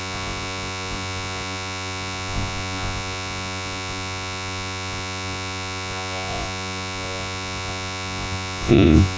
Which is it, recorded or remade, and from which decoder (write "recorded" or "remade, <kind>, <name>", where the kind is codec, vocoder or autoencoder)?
remade, vocoder, Vocos